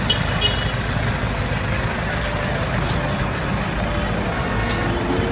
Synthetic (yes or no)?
no